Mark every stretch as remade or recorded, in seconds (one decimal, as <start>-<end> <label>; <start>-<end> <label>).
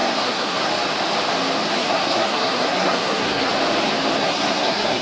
0.0-0.7 remade; 0.7-1.7 recorded; 1.7-3.5 remade; 3.5-4.2 recorded; 4.2-5.0 remade